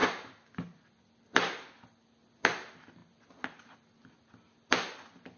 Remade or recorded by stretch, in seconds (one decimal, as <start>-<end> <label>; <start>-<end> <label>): 0.0-5.4 recorded